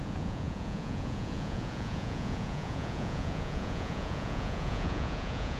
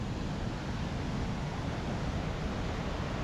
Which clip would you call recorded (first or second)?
second